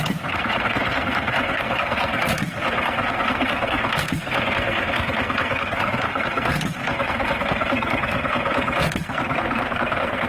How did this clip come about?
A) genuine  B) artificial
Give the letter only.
B